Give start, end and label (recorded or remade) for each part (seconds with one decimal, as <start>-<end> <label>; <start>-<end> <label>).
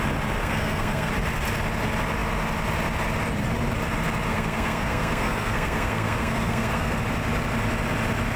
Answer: 0.0-0.4 recorded; 0.4-1.1 remade; 1.1-4.3 recorded; 4.3-7.0 remade; 7.0-8.4 recorded